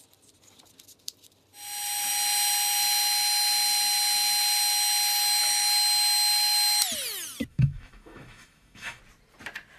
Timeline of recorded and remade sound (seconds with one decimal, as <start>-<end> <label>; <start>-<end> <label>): 0.0-7.5 recorded; 7.5-9.0 remade; 9.0-9.8 recorded